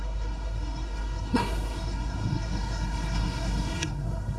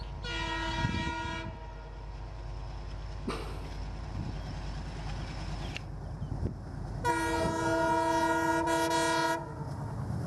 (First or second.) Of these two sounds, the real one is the second